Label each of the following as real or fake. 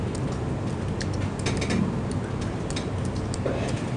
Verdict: real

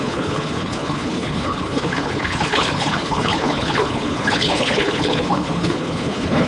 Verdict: fake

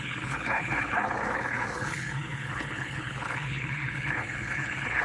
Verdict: fake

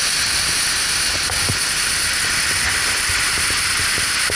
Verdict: real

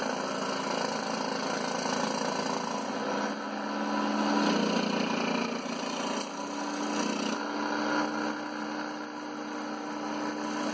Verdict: real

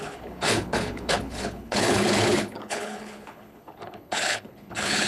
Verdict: fake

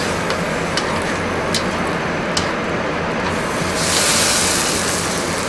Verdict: real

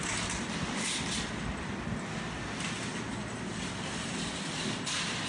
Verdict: real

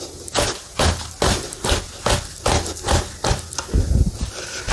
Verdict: real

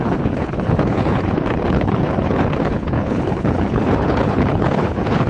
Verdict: fake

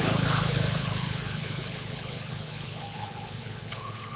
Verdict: fake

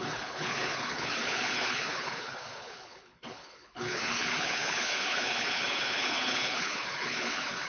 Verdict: fake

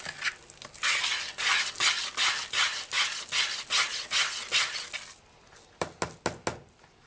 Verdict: real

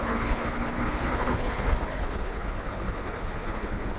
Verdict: fake